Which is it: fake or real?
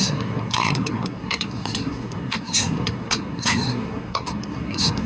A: fake